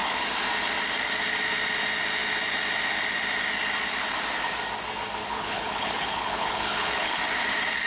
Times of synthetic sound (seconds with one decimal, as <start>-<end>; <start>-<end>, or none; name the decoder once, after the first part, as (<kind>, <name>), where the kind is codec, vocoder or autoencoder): 5.2-7.2 (codec, HILCodec)